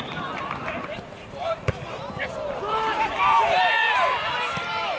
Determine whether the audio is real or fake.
fake